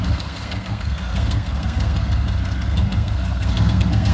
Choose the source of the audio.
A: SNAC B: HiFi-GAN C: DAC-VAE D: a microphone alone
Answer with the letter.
A